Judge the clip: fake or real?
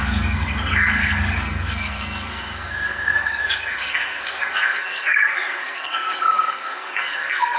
fake